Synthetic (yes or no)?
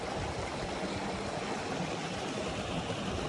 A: no